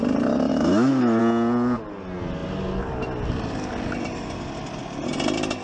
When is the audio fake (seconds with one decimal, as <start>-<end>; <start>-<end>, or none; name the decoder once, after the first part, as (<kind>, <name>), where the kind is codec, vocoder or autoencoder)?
0.5-1.2 (autoencoder, DAC-VAE)